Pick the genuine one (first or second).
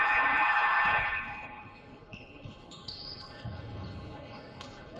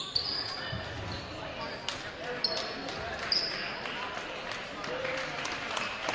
second